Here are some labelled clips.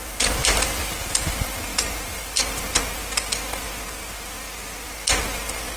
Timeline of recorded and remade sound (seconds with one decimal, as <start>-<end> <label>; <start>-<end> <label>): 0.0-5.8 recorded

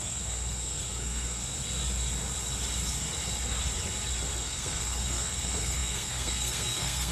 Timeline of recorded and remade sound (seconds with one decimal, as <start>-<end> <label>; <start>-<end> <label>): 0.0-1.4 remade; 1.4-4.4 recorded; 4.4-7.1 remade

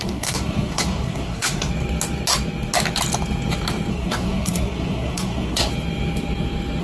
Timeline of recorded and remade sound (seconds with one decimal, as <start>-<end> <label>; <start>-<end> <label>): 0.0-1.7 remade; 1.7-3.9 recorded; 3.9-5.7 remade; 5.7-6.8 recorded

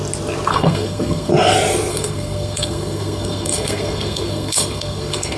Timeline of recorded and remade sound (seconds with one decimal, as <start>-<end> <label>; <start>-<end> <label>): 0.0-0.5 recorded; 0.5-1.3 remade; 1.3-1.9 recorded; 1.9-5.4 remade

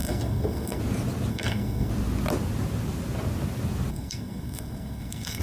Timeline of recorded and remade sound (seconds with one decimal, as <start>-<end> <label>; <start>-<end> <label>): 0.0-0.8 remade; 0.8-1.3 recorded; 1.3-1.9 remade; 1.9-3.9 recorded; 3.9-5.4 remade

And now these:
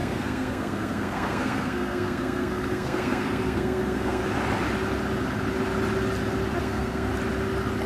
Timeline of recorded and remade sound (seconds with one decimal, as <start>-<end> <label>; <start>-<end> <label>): 0.0-4.2 remade; 4.2-6.6 recorded; 6.6-7.1 remade; 7.1-7.9 recorded